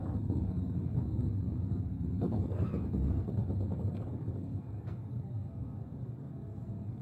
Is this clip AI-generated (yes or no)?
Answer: yes